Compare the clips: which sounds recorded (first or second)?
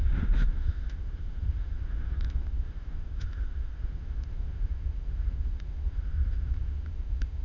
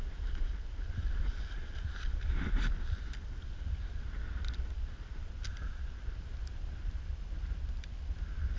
second